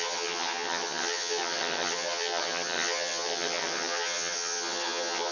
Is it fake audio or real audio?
fake